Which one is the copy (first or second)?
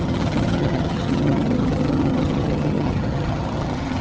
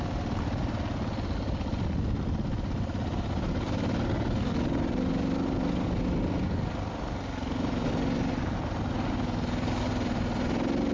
first